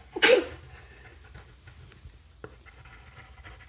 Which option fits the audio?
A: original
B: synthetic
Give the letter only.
A